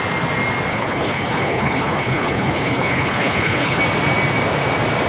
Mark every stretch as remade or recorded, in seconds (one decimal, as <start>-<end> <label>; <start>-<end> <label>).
0.0-0.7 recorded; 0.7-3.8 remade; 3.8-5.1 recorded